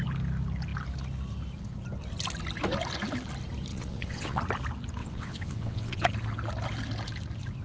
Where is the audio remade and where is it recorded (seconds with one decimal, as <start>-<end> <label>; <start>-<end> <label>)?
0.0-3.7 recorded; 3.7-4.4 remade; 4.4-5.0 recorded; 5.0-6.1 remade; 6.1-7.6 recorded